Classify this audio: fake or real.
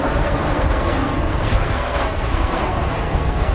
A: fake